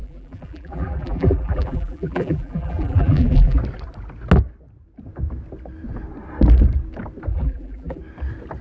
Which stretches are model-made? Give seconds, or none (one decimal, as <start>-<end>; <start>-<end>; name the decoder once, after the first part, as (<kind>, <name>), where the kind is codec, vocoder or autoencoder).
0.0-3.6 (vocoder, BigVGAN v2); 7.3-8.0